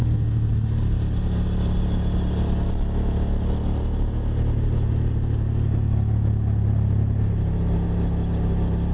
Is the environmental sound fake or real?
real